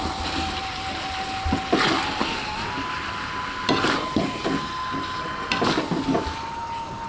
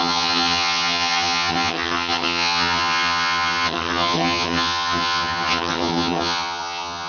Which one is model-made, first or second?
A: second